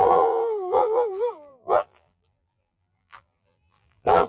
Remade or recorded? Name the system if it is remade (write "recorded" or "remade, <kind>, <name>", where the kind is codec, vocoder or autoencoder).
remade, vocoder, BigVGAN v2